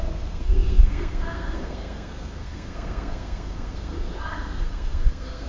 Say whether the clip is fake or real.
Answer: fake